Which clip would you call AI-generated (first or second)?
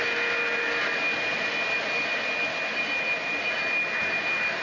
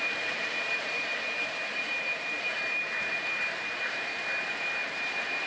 second